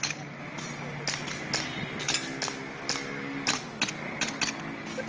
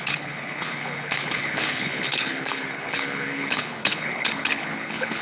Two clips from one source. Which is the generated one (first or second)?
second